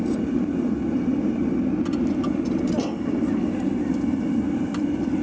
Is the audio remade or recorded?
recorded